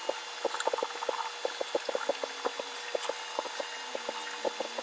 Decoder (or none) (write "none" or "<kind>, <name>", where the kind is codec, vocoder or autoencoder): none